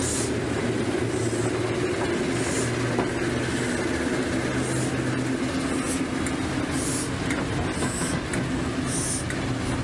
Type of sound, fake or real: real